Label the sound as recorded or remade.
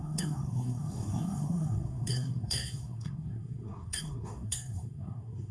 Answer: remade